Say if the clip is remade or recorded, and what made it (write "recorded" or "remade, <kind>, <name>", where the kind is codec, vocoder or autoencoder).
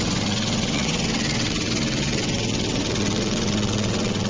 remade, vocoder, WaveNeXt